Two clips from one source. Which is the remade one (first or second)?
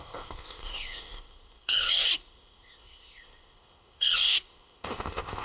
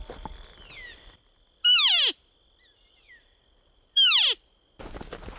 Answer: first